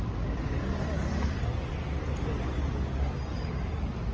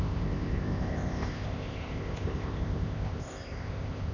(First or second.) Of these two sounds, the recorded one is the first